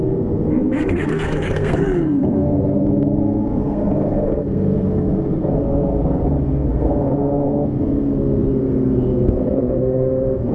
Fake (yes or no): yes